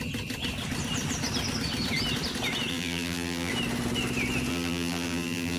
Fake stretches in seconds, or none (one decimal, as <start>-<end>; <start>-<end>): 2.7-3.5; 4.5-5.6